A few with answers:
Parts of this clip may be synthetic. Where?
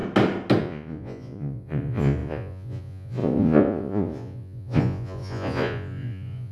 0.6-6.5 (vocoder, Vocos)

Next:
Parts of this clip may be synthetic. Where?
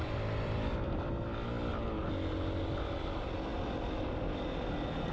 0.0-2.1 (vocoder, BigVGAN v2); 3.5-5.1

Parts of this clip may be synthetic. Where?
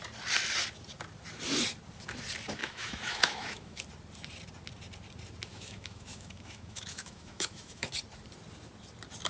2.6-3.8 (autoencoder, DAC-VAE); 5.5-7.9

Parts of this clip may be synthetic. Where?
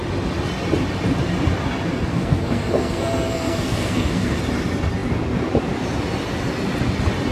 2.1-4.4 (codec, SNAC)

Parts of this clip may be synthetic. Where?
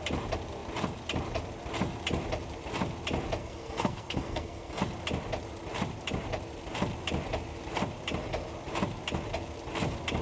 3.4-4.8 (codec, SNAC)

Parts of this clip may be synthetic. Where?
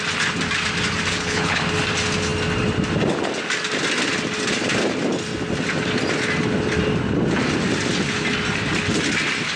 1.1-1.6 (codec, HILCodec)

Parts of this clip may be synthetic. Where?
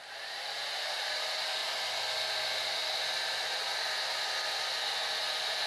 0.0-1.6 (vocoder, BigVGAN v2); 3.3-3.7; 5.2-5.7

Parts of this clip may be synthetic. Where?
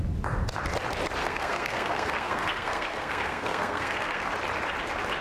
1.2-4.3 (codec, SNAC)